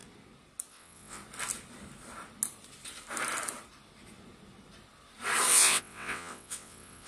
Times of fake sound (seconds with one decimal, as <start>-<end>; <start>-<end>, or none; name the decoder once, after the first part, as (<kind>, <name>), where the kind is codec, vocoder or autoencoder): 0.7-1.2 (vocoder, WaveNeXt); 5.5-7.1